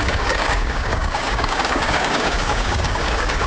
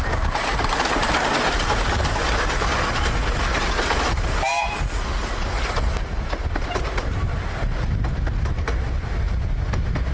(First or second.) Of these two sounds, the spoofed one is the first